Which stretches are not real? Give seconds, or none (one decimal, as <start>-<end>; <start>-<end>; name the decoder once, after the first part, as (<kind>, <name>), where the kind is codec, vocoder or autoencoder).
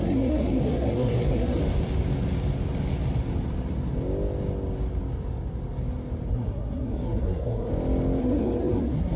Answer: 0.0-1.6 (codec, SNAC); 6.3-7.7; 8.2-9.2